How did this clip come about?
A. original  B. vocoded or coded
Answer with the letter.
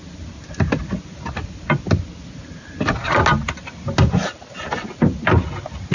A